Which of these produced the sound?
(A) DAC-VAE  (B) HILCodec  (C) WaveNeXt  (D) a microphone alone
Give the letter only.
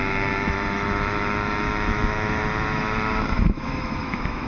A